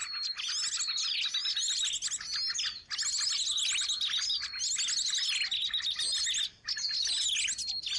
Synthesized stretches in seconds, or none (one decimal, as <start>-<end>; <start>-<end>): none